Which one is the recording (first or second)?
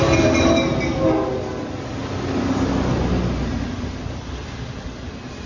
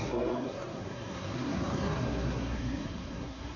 first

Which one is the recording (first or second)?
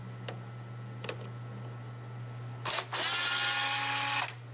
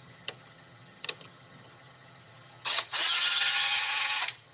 first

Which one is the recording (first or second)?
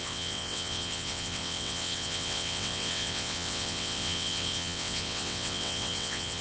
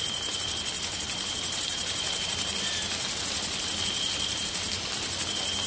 second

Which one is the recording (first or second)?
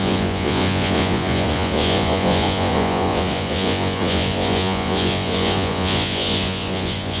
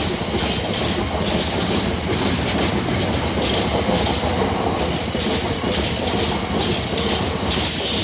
second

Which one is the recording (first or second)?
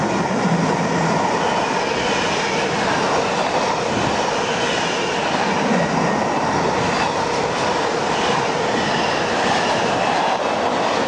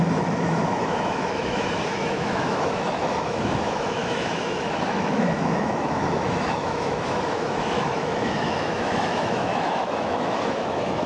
first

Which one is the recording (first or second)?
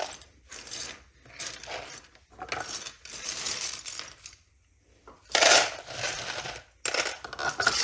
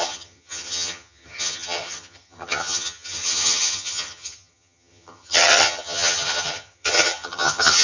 first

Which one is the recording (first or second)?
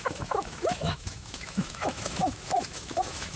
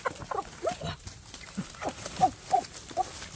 second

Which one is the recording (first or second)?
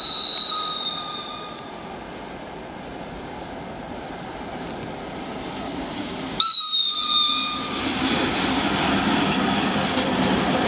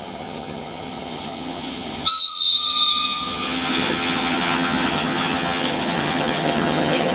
first